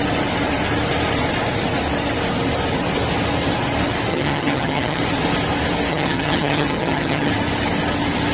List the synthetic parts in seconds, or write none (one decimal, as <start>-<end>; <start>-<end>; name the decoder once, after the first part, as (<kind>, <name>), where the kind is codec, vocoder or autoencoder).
4.1-5.0 (vocoder, HiFi-GAN); 5.9-7.3